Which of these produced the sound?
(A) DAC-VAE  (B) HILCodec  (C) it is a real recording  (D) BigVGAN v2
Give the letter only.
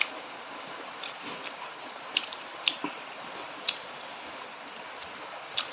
D